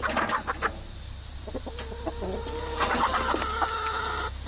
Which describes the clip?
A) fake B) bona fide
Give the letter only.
B